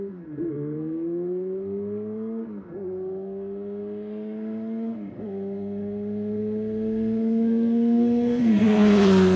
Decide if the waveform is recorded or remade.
remade